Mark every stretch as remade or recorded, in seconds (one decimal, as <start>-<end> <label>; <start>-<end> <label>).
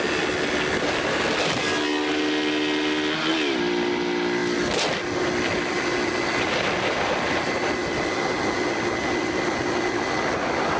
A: 0.0-10.8 recorded